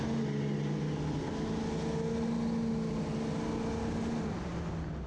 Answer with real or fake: real